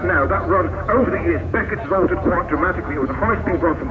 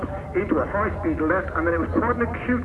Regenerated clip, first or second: first